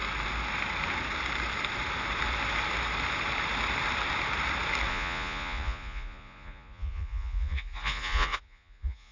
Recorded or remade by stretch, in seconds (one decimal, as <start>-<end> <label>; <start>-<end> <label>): 0.0-4.9 recorded; 4.9-9.1 remade